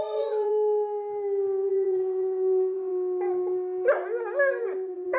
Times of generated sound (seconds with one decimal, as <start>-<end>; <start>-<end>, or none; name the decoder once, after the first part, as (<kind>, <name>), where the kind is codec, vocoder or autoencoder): 0.0-0.5 (vocoder, Vocos); 1.7-2.9; 4.6-5.2